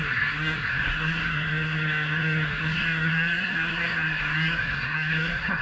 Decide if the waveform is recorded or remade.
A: remade